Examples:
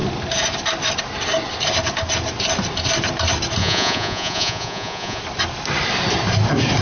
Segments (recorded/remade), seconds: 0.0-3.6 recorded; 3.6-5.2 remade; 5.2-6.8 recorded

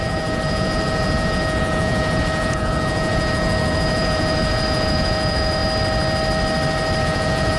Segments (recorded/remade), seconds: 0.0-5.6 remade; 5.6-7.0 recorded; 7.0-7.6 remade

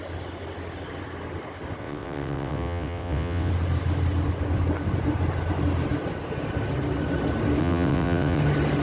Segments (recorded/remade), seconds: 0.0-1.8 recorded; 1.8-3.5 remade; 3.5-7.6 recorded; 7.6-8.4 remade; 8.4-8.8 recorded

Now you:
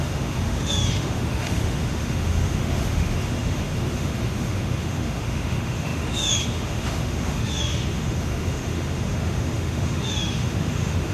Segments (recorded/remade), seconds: 0.0-11.1 remade

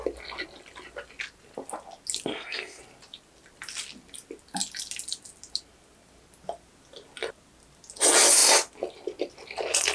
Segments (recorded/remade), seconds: 0.0-2.3 recorded; 2.3-2.8 remade; 2.8-9.9 recorded

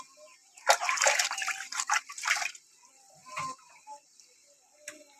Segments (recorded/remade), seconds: 0.0-0.4 recorded; 0.4-2.0 remade; 2.0-5.2 recorded

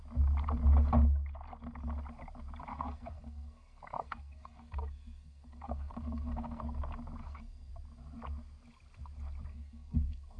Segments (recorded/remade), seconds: 0.0-2.7 recorded; 2.7-6.8 remade; 6.8-7.2 recorded; 7.2-7.7 remade; 7.7-9.5 recorded; 9.5-10.4 remade

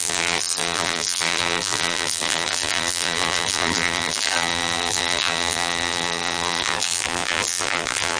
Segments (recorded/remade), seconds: 0.0-8.2 remade